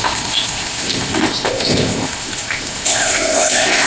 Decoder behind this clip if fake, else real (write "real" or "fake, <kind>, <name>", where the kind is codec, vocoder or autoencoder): fake, codec, ZipCodec